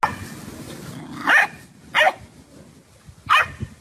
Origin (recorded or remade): recorded